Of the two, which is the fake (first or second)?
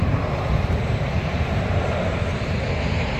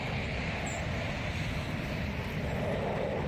first